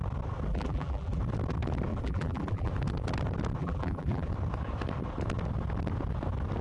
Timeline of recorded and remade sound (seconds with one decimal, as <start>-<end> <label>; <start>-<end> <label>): 0.0-0.5 recorded; 0.5-1.2 remade; 1.2-1.9 recorded; 1.9-2.7 remade; 2.7-3.6 recorded; 3.6-4.3 remade; 4.3-6.6 recorded